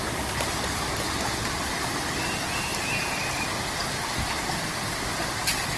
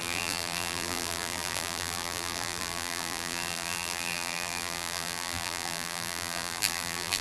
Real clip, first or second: first